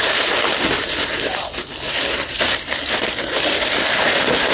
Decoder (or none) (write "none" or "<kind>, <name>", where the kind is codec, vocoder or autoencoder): none